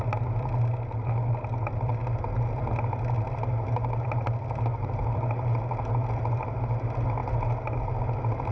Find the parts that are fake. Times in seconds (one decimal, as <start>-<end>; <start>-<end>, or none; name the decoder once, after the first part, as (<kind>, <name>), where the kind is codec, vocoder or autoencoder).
none